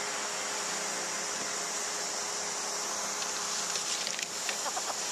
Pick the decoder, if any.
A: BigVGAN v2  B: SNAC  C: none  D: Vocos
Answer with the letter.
C